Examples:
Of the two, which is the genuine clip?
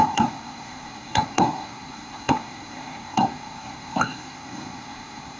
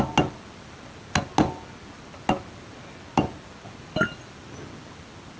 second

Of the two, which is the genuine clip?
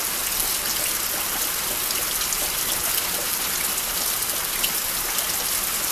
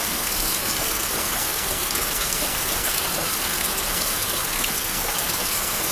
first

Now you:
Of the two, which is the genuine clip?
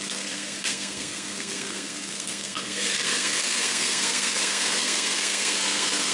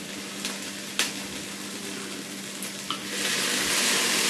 second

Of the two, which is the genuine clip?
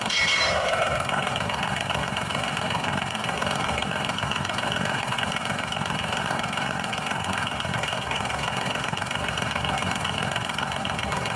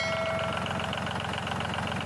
second